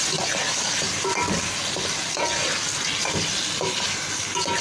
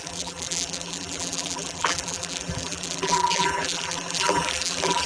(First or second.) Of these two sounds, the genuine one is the first